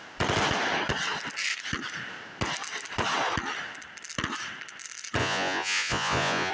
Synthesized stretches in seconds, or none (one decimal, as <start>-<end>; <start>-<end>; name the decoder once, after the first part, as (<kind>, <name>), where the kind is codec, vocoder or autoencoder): 5.2-6.5 (vocoder, Vocos)